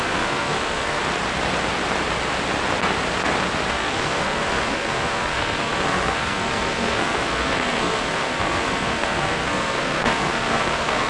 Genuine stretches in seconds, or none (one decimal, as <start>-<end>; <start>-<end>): 1.0-3.7